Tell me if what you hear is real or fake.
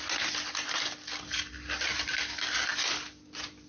real